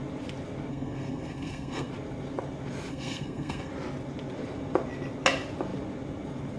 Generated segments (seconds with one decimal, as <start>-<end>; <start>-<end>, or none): 0.7-1.9; 2.9-3.7